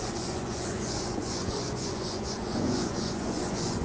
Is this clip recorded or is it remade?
remade